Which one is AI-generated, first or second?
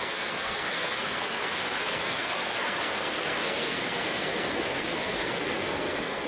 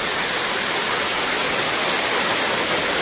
first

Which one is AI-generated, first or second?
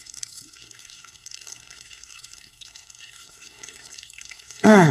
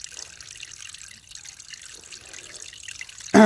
first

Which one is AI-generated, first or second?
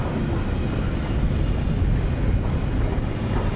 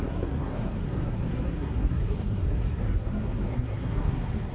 second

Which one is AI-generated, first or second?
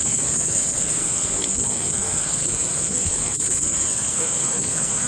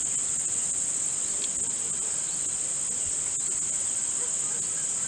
first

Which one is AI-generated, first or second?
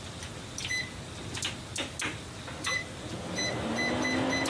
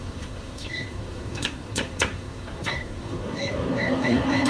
second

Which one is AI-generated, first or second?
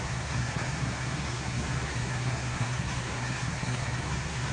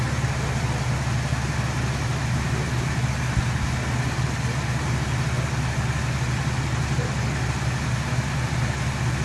first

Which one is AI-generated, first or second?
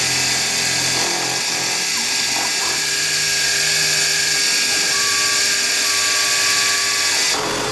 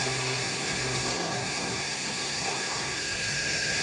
second